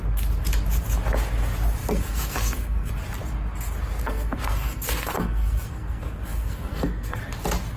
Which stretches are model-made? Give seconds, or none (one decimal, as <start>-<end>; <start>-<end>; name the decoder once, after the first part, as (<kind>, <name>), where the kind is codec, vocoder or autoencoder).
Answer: 1.8-2.9 (codec, SNAC); 4.0-7.2